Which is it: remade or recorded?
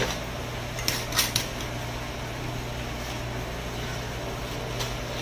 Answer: recorded